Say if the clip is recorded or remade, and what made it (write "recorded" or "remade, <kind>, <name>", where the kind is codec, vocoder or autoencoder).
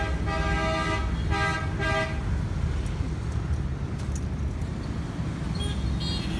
recorded